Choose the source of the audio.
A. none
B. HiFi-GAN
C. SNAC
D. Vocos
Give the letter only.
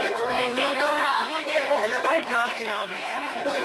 C